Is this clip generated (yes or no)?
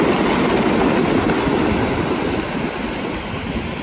no